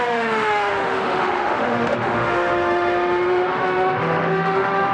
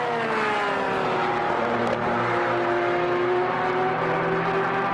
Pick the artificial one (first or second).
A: first